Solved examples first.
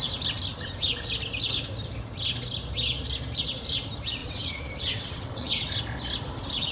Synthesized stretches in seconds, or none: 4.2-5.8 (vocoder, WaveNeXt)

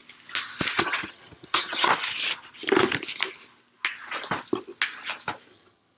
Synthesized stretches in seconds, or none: 0.8-1.9 (vocoder, HiFi-GAN); 5.5-6.0

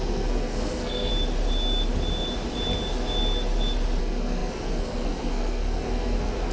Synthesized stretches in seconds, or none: 0.0-1.1 (codec, SNAC); 4.0-6.5

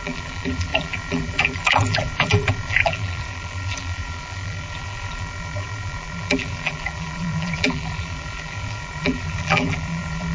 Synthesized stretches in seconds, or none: 0.0-10.3 (vocoder, BigVGAN v2)

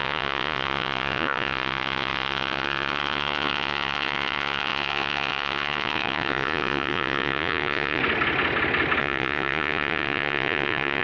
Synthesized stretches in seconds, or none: 0.0-8.0 (vocoder, Vocos); 9.0-11.0

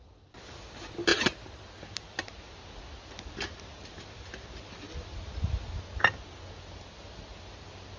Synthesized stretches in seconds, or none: none

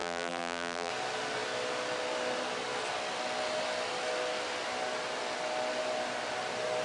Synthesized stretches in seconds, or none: 0.0-0.9 (vocoder, BigVGAN v2)

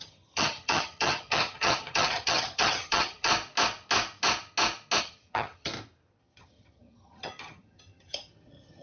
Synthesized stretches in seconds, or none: 0.0-3.3 (vocoder, HiFi-GAN); 5.0-5.7; 6.2-8.8